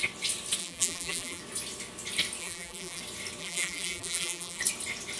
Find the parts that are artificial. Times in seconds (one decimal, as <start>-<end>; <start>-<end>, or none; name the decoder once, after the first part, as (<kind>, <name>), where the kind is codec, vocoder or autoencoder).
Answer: 0.6-1.4 (vocoder, BigVGAN v2); 2.4-3.0; 3.4-4.6